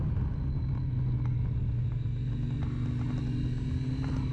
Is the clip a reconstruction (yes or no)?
no